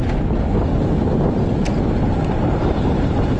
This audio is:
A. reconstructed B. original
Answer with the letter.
B